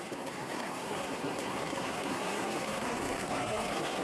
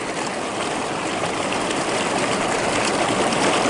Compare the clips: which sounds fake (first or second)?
first